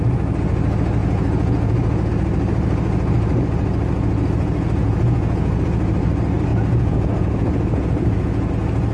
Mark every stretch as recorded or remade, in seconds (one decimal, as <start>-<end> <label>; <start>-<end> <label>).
0.0-1.0 recorded; 1.0-2.1 remade; 2.1-4.8 recorded; 4.8-5.6 remade; 5.6-6.5 recorded; 6.5-8.5 remade; 8.5-8.9 recorded